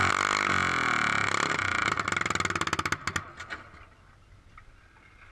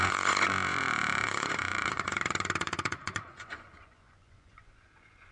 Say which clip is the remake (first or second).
second